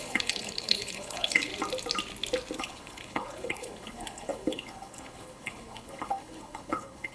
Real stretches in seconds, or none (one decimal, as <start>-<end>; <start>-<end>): 1.5-2.6